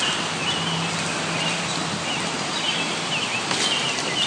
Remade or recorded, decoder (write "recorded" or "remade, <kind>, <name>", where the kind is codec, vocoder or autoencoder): recorded